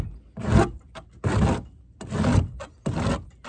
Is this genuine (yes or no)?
yes